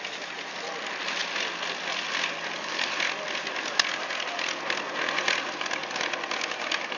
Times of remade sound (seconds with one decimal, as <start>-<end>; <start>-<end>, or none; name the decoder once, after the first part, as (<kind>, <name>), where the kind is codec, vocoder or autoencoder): none